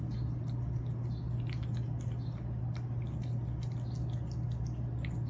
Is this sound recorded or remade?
recorded